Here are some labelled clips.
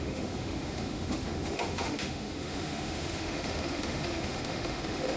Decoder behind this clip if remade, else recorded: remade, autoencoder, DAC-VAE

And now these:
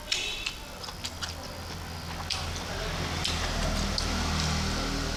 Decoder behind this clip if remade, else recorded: recorded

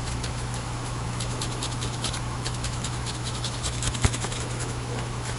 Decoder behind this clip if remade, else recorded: remade, autoencoder, DAC-VAE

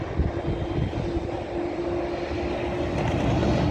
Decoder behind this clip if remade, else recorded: recorded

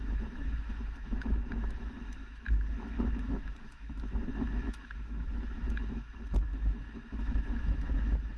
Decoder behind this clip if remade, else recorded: remade, autoencoder, DAC-VAE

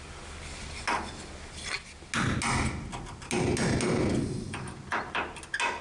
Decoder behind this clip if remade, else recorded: recorded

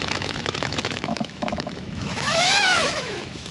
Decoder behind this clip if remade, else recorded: remade, autoencoder, DAC-VAE